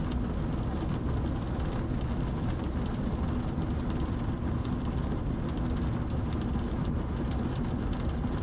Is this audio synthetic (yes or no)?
no